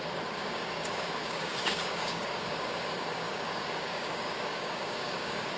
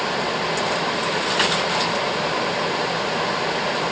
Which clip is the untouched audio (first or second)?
second